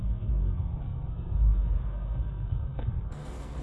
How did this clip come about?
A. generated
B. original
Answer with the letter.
A